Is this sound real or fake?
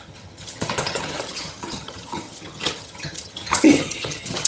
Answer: fake